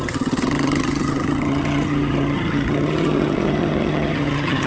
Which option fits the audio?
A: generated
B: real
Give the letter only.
A